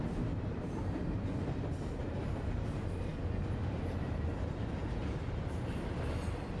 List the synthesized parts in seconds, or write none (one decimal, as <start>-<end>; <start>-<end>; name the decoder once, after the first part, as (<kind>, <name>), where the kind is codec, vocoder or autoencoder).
0.0-1.3 (vocoder, BigVGAN v2); 2.0-3.1; 3.7-5.0